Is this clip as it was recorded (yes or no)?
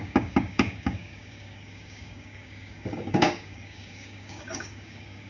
no